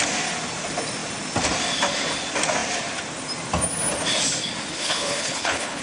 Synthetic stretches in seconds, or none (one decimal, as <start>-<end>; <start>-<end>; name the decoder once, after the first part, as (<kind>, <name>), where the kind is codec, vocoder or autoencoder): 4.7-5.8 (codec, HILCodec)